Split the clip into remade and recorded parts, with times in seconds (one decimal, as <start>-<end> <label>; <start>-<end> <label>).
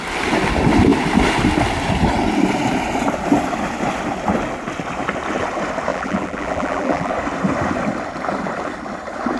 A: 0.0-5.9 recorded; 5.9-7.1 remade; 7.1-9.4 recorded